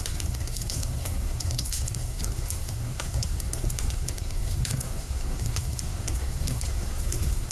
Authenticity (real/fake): fake